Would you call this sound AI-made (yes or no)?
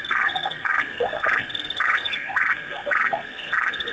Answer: yes